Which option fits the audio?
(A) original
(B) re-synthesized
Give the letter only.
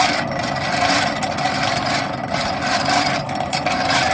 A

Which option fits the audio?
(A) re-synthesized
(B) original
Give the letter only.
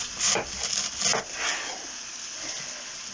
B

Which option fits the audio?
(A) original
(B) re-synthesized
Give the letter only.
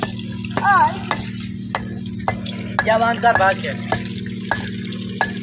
A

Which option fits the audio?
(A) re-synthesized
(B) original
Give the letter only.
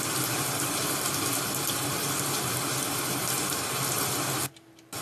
B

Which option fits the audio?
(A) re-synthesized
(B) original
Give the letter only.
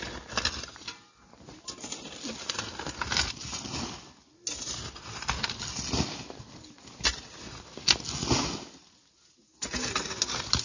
B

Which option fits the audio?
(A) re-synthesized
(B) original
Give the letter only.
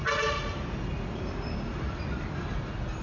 B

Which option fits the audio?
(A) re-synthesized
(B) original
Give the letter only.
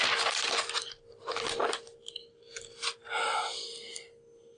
B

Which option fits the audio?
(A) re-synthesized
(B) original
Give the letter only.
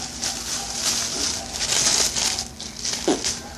B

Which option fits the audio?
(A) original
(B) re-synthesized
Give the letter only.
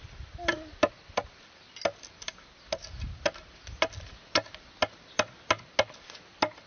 A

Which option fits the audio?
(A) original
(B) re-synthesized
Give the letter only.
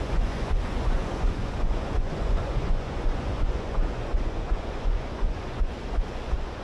B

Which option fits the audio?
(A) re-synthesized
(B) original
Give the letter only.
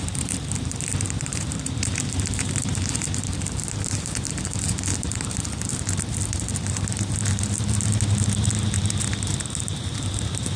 A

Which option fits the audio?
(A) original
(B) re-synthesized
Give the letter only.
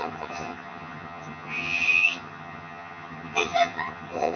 B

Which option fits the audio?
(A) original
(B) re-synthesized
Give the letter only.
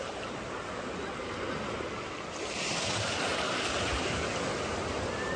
A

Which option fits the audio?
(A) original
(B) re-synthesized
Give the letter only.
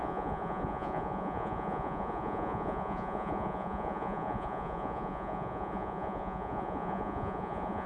B